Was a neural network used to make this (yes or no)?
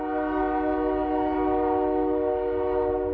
no